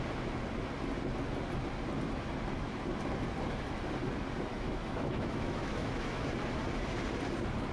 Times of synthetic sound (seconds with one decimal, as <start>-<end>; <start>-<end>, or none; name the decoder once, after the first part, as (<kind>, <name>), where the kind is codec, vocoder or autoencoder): 4.5-6.3 (autoencoder, DAC-VAE)